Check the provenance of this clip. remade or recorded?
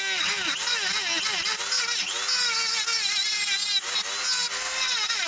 recorded